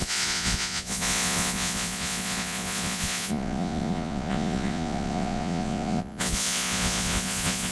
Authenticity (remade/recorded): remade